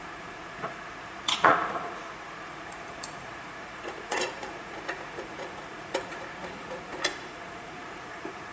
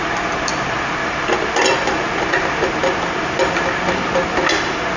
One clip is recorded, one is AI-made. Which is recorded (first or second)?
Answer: second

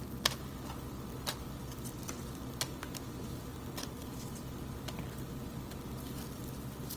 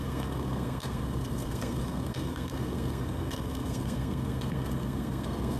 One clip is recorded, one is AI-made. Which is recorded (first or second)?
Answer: first